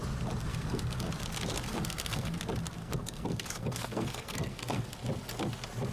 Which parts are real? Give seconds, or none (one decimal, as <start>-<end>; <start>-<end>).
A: 0.0-0.5; 1.1-1.7; 2.4-2.8; 4.9-5.9